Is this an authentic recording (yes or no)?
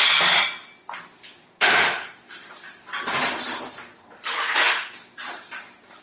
yes